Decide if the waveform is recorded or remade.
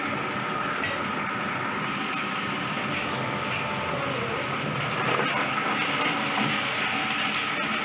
recorded